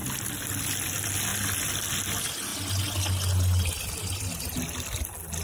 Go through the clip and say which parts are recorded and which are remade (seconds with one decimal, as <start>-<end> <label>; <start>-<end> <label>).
0.0-5.4 recorded